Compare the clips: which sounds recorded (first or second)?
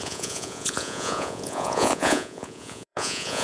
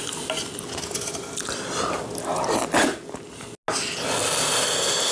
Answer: second